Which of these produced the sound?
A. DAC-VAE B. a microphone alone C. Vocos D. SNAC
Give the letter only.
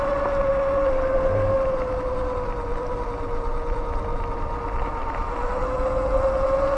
B